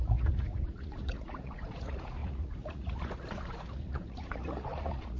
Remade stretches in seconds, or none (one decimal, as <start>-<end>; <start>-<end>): 0.0-5.2